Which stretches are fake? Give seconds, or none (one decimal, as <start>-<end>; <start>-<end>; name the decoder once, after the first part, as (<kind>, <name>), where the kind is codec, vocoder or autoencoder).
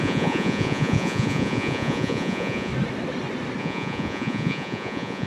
0.0-2.7 (vocoder, Vocos); 3.6-5.3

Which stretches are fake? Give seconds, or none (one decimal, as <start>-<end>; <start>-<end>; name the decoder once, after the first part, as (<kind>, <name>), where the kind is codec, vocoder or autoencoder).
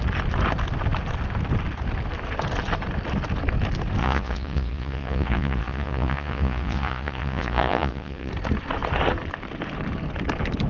4.0-8.3 (vocoder, Vocos)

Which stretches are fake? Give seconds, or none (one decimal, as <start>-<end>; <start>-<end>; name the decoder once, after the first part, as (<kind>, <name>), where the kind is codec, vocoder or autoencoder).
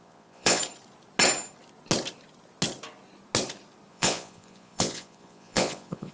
0.0-0.6 (vocoder, Vocos); 3.9-6.1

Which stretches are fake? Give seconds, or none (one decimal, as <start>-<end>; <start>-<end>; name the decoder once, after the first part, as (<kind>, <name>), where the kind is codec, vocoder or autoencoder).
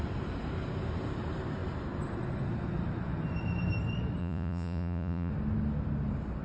4.2-5.3 (vocoder, Vocos)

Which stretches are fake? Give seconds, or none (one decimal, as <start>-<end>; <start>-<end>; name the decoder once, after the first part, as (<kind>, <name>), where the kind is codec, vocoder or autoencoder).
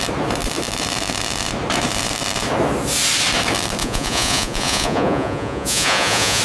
3.8-6.4 (vocoder, Vocos)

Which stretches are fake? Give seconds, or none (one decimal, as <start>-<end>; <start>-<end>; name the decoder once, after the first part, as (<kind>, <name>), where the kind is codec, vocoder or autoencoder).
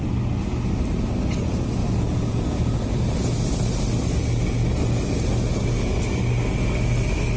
1.8-2.4 (vocoder, Vocos)